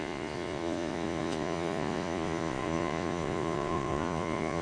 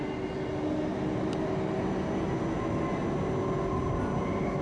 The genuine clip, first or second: second